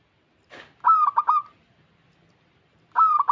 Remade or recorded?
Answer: recorded